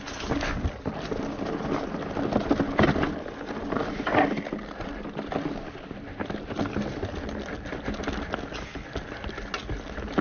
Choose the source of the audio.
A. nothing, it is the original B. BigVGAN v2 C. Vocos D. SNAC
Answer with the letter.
A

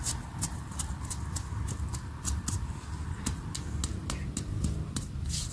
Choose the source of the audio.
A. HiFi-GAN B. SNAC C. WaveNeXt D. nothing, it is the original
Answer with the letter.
D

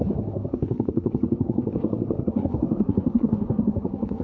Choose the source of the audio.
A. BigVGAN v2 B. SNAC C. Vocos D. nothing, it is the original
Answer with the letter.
B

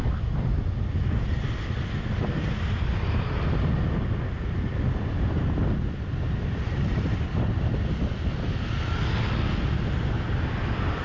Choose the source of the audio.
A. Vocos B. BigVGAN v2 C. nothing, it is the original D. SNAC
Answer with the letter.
C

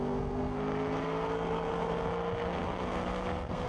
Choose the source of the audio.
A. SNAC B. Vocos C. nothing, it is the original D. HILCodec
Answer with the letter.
A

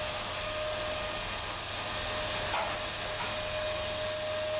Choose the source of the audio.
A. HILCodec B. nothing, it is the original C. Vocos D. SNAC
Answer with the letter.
B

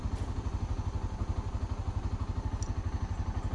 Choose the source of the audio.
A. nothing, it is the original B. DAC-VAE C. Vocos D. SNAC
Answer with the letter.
A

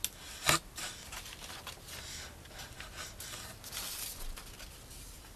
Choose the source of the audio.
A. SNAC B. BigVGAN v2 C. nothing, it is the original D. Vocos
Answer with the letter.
C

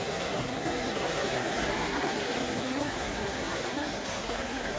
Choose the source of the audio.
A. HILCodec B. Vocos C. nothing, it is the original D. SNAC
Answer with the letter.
D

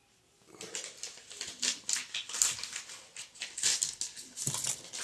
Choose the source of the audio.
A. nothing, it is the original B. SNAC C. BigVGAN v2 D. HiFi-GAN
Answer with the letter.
A